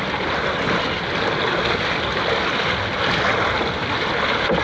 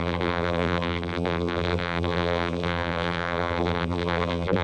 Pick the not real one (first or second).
second